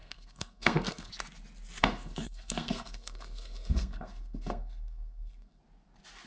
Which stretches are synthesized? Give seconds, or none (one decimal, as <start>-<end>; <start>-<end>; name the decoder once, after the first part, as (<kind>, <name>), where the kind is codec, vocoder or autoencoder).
0.0-1.1 (codec, SNAC); 1.8-5.6